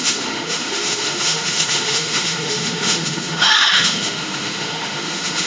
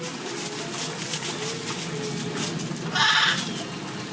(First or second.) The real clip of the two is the second